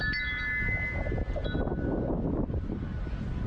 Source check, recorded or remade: recorded